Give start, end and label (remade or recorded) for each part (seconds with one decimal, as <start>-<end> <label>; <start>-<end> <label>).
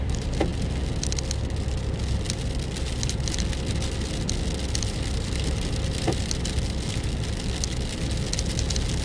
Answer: 0.0-9.0 recorded